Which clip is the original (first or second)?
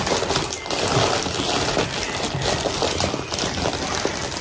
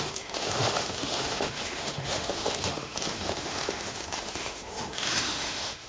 first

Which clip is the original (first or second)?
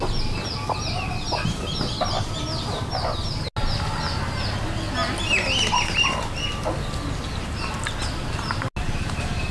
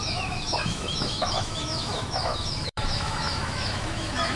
first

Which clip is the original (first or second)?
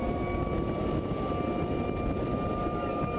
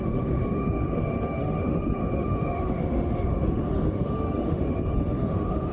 first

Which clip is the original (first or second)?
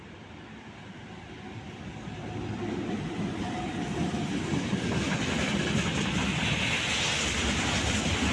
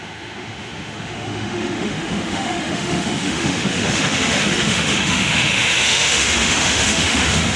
first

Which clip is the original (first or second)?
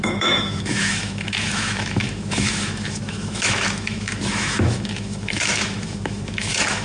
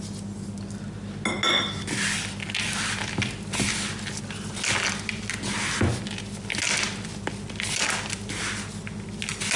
second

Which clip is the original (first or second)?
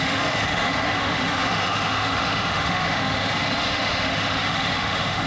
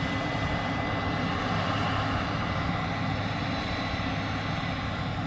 second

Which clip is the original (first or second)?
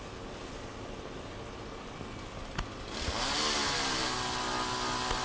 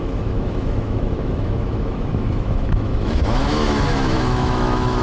first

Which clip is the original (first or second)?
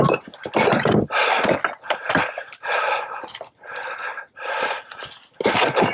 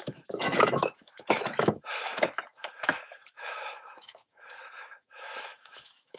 first